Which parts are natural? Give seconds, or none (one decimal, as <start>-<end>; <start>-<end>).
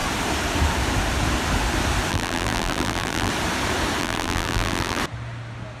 0.0-2.1; 3.3-4.0; 5.0-5.8